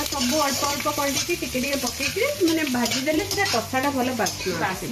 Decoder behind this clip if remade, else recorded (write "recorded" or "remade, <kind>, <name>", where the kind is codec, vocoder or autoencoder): remade, vocoder, BigVGAN v2